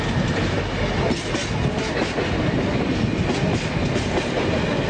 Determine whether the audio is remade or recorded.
recorded